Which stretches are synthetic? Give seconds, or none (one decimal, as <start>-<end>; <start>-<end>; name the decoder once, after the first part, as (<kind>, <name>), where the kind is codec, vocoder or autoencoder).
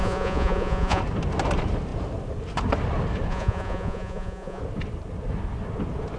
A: 0.0-1.0 (vocoder, Vocos); 3.3-4.6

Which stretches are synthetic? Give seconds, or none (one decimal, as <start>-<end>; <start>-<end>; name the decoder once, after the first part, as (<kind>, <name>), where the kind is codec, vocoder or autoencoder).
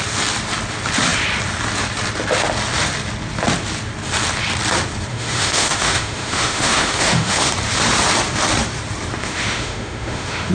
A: 5.1-7.5 (autoencoder, DAC-VAE); 9.2-10.5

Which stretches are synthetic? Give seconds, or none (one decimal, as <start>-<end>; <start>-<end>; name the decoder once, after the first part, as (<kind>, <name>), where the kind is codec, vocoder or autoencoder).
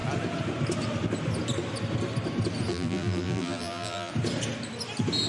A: 2.7-4.1 (vocoder, BigVGAN v2)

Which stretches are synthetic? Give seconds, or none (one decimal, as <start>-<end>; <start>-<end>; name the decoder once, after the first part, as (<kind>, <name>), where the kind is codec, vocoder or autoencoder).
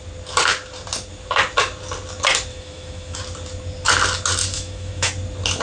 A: 2.5-3.2 (autoencoder, DAC-VAE); 4.5-5.1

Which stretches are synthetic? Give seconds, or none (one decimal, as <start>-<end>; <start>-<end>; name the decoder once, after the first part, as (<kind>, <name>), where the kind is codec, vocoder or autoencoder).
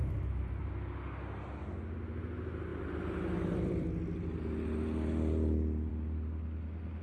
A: 0.0-0.7 (vocoder, BigVGAN v2); 2.7-5.9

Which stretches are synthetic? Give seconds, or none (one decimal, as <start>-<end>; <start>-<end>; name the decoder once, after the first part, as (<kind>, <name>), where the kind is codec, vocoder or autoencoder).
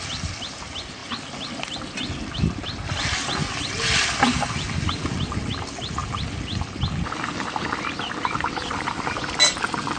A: none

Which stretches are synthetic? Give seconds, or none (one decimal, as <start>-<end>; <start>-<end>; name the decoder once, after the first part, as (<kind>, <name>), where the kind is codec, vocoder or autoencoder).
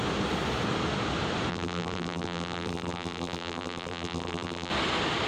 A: 1.5-4.7 (vocoder, BigVGAN v2)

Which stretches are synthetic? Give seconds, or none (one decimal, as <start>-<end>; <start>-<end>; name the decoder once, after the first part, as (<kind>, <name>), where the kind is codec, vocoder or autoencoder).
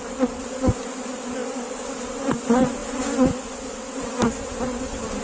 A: none